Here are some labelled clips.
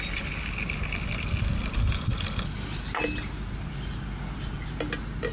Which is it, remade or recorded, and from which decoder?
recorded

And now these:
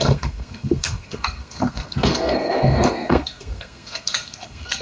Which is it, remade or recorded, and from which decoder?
remade, codec, SNAC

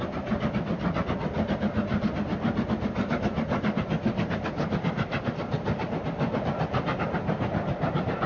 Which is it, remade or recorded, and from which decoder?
recorded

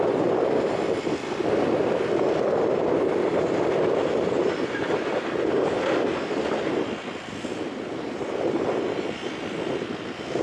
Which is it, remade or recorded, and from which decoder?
recorded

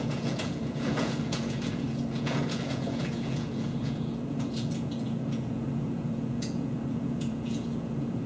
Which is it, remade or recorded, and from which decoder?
remade, vocoder, Vocos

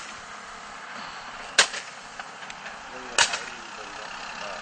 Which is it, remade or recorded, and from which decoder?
recorded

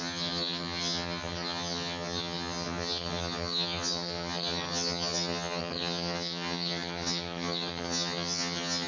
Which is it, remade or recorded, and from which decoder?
remade, vocoder, HiFi-GAN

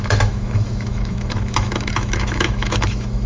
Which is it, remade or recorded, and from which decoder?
remade, autoencoder, DAC-VAE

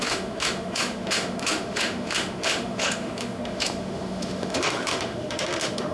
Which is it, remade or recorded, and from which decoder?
remade, autoencoder, DAC-VAE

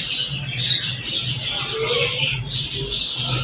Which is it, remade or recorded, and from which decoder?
recorded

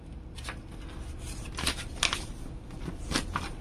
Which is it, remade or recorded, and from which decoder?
recorded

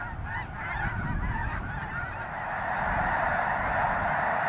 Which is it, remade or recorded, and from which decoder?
recorded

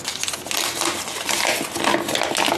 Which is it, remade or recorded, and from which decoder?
recorded